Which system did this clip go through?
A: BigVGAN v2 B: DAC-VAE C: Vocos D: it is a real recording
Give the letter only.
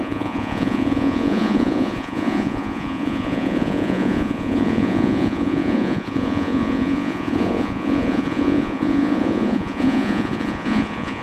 C